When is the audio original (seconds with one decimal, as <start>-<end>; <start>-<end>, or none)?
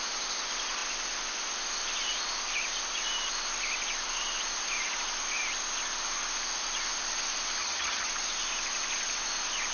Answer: 0.0-7.6; 8.1-9.7